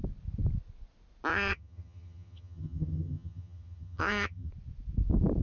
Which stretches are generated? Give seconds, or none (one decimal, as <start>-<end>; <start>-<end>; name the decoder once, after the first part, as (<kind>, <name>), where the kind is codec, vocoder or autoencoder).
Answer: 1.3-4.5 (vocoder, HiFi-GAN)